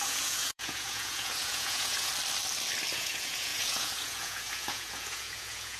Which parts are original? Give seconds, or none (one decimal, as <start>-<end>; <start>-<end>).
2.1-2.9